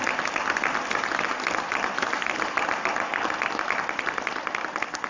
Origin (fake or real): real